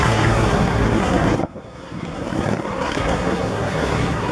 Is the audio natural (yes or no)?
no